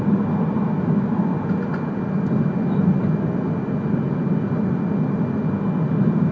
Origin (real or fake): real